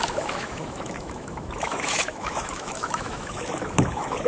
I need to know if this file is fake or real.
fake